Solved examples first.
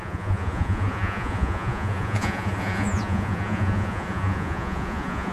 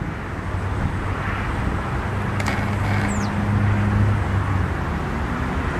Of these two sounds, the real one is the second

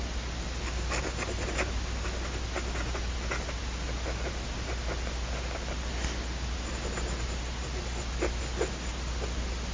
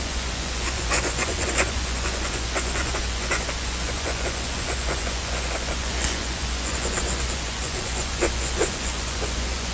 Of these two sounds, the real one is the first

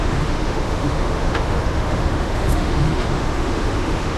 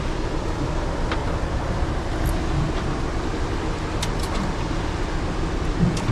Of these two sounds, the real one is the second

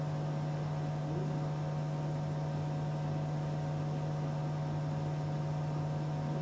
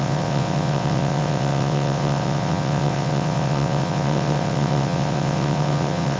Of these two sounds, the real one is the first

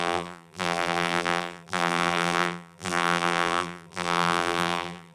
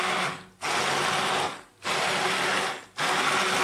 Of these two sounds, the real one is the second